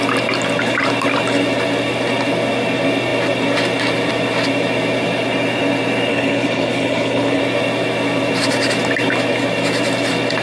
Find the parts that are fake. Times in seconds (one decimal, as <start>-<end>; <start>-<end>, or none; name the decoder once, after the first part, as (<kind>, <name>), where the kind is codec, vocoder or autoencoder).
6.1-7.4 (codec, HILCodec)